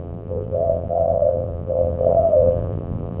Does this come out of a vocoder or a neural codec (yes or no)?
yes